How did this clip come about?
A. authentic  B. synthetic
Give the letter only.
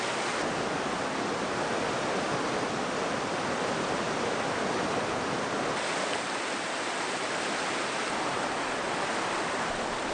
A